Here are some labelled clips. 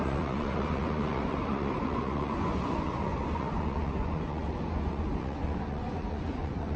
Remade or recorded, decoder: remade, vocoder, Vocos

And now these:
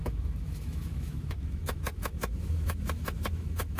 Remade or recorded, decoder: remade, autoencoder, DAC-VAE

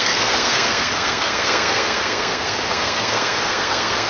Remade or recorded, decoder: remade, codec, SNAC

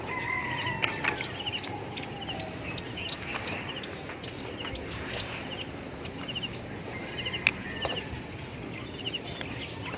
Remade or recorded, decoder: recorded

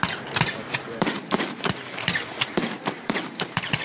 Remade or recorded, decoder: remade, vocoder, BigVGAN v2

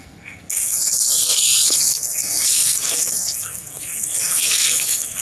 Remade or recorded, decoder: remade, codec, SNAC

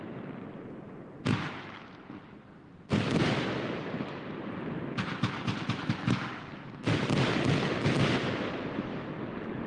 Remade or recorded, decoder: recorded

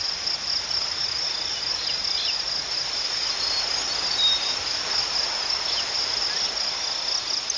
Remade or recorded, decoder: recorded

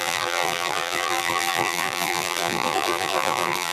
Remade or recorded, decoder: remade, vocoder, BigVGAN v2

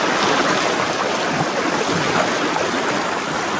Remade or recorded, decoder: recorded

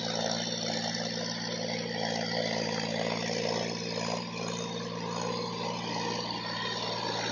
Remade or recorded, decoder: recorded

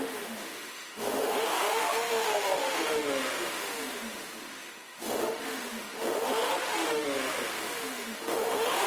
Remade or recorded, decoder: remade, autoencoder, DAC-VAE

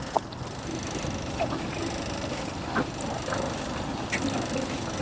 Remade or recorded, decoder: recorded